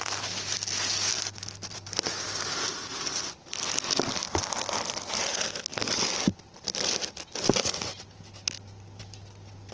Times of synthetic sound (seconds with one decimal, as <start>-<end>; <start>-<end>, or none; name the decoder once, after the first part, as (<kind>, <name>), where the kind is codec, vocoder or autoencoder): none